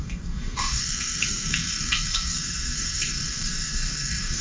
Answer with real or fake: fake